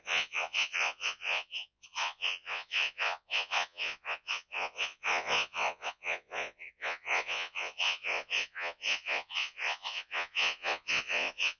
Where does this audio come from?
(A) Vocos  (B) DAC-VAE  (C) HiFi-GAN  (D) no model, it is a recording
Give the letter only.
A